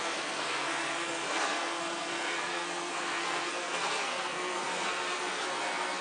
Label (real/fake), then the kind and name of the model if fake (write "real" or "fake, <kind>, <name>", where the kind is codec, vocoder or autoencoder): fake, codec, SNAC